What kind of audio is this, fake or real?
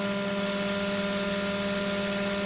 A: real